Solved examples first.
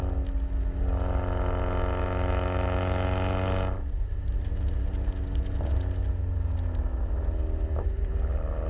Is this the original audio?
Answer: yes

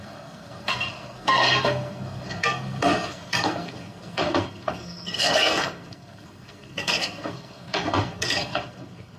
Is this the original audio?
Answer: no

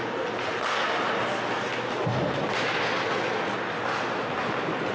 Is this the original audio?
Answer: yes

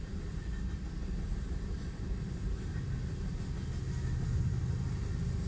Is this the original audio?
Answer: yes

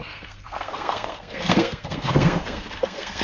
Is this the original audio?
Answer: no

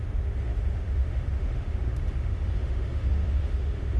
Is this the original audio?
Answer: no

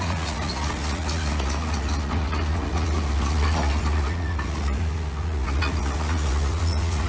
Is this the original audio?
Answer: no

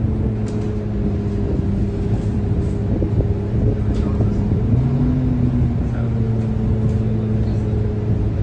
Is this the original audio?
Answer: yes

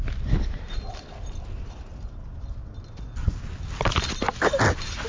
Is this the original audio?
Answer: yes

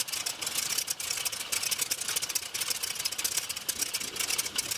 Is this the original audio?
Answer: yes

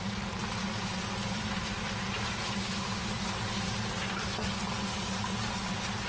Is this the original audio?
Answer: yes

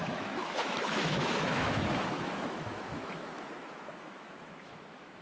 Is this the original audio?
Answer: no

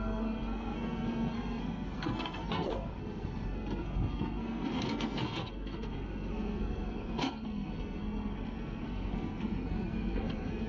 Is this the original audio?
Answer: no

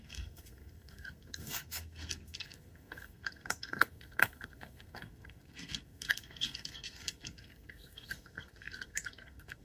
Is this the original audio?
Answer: no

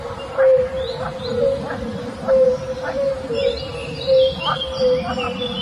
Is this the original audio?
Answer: yes